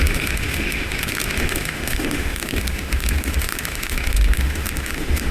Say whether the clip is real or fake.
fake